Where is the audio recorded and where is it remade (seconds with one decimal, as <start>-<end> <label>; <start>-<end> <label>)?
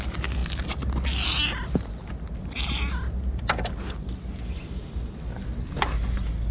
0.0-6.5 recorded